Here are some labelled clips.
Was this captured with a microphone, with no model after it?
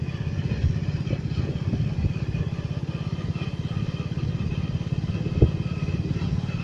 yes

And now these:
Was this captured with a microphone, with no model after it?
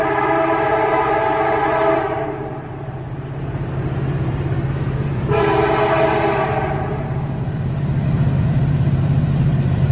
no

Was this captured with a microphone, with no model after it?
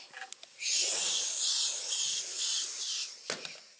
yes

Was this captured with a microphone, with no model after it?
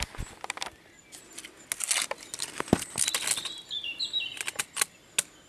yes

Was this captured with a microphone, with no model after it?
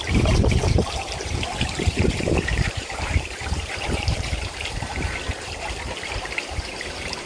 no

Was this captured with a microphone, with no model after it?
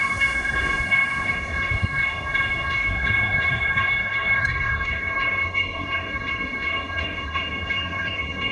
no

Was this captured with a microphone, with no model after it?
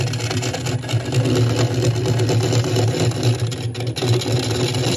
yes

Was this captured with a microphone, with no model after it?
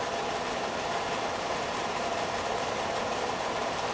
no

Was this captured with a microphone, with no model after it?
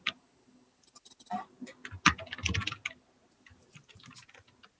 yes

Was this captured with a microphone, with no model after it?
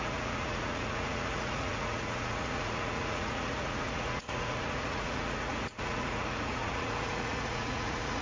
no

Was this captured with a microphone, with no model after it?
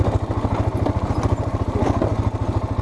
yes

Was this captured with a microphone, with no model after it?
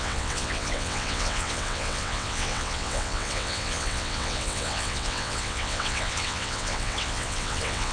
no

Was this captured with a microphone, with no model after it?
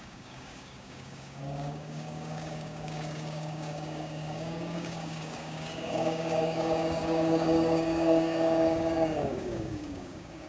no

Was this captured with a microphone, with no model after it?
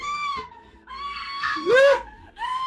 no